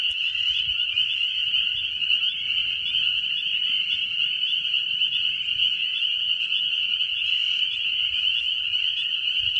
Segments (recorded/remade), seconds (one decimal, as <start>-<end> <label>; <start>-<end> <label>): 0.0-5.6 recorded; 5.6-8.6 remade; 8.6-9.6 recorded